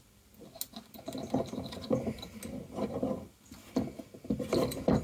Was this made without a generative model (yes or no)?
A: yes